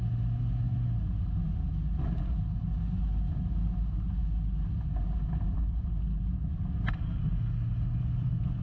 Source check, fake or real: real